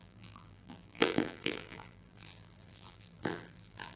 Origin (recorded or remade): remade